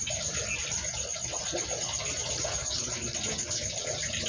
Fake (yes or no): no